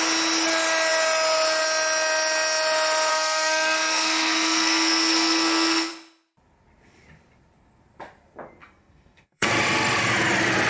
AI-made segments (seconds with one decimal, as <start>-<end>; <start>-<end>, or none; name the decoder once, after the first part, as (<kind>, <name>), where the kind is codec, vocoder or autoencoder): 3.1-5.9 (codec, SNAC); 8.6-9.5